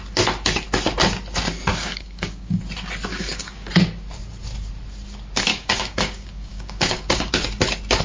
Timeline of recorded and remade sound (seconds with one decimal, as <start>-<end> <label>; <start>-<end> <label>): 0.0-1.7 recorded; 1.7-2.6 remade; 2.6-3.1 recorded; 3.1-3.7 remade; 3.7-5.5 recorded; 5.5-7.3 remade; 7.3-8.0 recorded